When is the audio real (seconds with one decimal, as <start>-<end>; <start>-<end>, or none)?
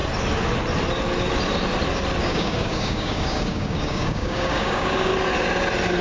0.0-2.2; 5.1-6.0